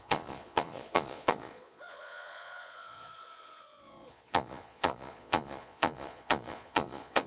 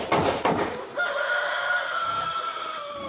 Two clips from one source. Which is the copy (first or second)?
first